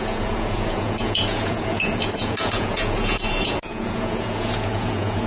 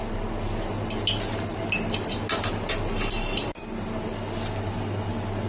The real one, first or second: second